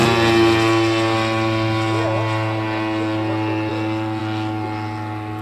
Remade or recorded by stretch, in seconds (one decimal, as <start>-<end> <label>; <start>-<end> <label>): 0.0-5.4 recorded